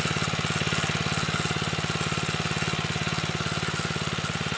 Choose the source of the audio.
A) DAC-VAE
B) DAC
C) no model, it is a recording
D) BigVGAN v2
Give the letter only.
C